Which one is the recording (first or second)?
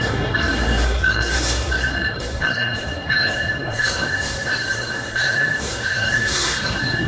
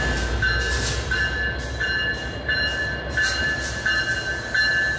second